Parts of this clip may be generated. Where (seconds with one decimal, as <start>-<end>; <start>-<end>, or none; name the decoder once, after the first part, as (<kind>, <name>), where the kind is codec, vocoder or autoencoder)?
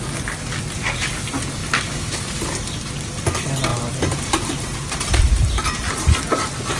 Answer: 1.6-2.4 (vocoder, BigVGAN v2); 3.7-5.6